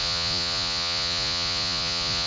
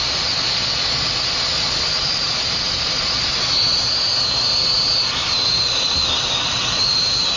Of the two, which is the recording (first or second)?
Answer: second